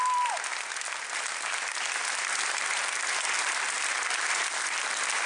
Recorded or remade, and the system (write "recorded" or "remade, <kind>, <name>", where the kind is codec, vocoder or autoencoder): recorded